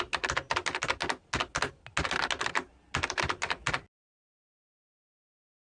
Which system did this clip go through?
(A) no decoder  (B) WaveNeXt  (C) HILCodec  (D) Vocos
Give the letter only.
A